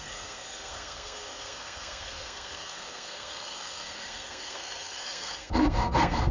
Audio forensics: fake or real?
fake